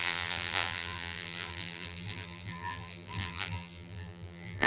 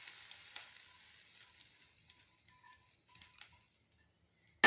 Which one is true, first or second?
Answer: second